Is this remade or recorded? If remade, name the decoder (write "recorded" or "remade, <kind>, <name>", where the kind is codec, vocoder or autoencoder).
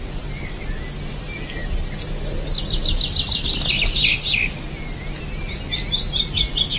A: recorded